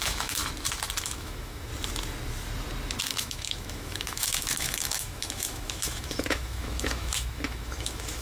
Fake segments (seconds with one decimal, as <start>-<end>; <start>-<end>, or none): 0.0-0.4; 1.0-1.7; 3.0-8.2